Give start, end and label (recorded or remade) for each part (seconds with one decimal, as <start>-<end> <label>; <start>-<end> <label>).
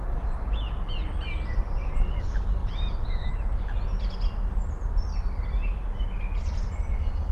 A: 0.0-2.6 recorded; 2.6-3.3 remade; 3.3-7.3 recorded